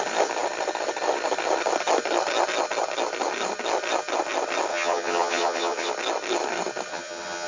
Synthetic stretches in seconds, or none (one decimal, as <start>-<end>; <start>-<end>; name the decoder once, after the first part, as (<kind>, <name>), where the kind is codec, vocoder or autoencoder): 4.7-5.9 (vocoder, HiFi-GAN); 6.9-7.5